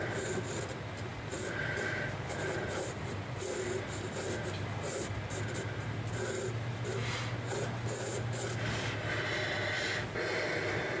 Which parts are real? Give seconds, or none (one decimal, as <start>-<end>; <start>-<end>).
0.0-11.0